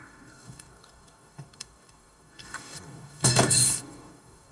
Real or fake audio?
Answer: fake